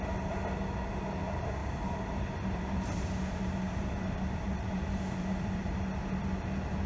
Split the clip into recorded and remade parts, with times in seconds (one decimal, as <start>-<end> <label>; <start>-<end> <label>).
0.0-1.6 recorded; 1.6-5.7 remade; 5.7-6.9 recorded